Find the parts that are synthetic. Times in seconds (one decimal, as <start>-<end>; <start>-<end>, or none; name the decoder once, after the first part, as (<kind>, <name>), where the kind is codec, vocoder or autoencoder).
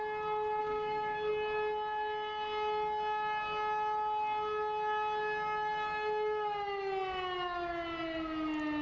0.6-1.3 (codec, DAC)